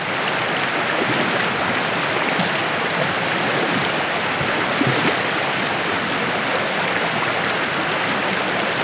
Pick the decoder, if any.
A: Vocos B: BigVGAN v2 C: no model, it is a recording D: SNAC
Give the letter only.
C